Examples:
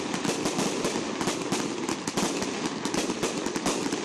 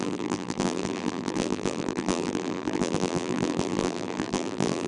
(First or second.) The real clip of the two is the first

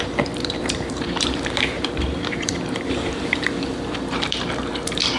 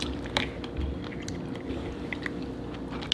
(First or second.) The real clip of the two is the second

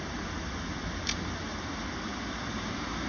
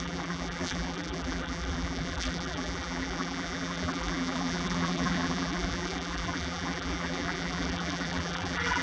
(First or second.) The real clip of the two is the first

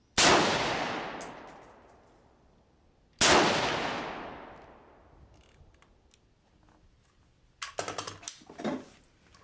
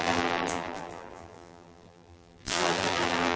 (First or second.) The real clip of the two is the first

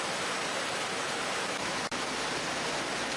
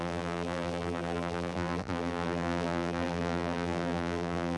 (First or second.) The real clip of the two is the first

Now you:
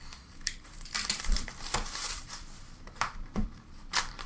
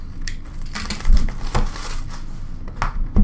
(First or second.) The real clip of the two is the second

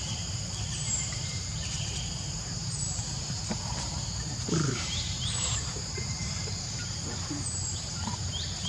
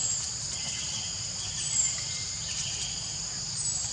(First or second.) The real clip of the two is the second